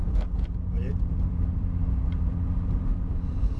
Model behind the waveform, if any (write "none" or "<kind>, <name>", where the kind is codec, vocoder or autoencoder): vocoder, BigVGAN v2